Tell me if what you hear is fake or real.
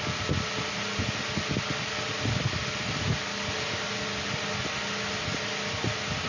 real